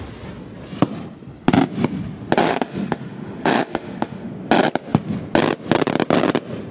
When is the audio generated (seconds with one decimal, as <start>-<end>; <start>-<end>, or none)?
2.4-4.3